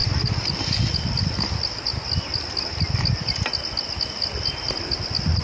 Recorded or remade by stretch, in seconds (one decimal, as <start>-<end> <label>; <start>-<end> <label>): 0.0-0.8 remade; 0.8-5.4 recorded